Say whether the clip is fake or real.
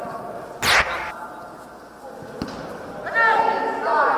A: real